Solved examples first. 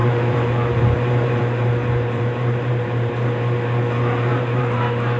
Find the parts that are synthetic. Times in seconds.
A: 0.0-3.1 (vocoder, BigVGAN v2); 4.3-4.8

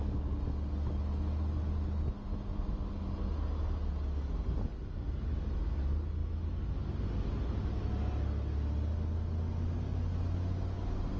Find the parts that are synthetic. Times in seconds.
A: none